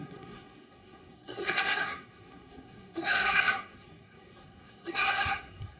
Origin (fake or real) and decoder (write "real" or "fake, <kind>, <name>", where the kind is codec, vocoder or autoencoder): fake, codec, SNAC